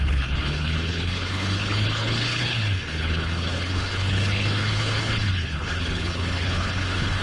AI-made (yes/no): yes